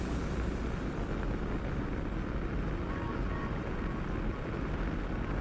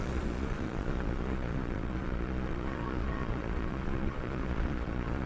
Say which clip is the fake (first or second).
second